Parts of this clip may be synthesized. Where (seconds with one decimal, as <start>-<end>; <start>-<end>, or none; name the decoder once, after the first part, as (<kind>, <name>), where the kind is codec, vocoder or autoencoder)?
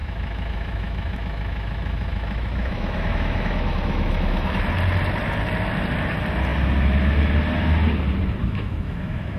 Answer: 0.0-4.7 (autoencoder, DAC-VAE); 8.4-9.4